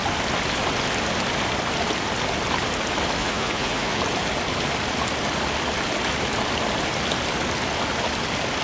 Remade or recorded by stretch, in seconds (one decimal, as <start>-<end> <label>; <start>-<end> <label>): 0.0-3.2 recorded; 3.2-4.0 remade; 4.0-8.6 recorded